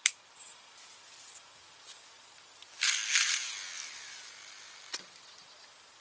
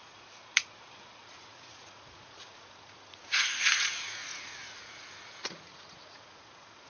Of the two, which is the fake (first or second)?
second